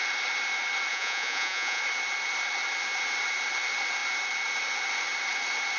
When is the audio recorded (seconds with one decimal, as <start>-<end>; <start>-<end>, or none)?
0.0-0.9; 1.8-5.8